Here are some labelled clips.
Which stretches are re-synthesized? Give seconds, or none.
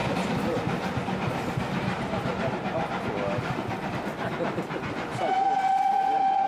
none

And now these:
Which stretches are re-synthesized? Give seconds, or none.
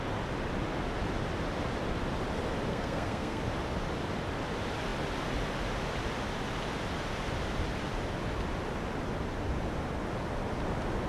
2.7-3.4 (codec, SNAC)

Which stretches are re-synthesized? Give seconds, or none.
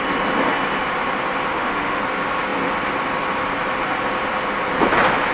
1.5-2.0 (autoencoder, DAC-VAE)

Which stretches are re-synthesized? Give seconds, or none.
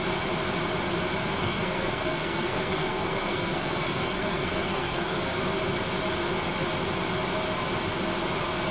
1.4-5.4 (codec, SNAC)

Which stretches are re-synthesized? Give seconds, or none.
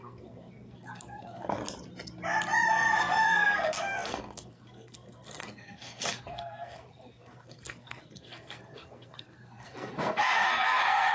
0.0-1.6 (codec, SNAC); 3.0-11.1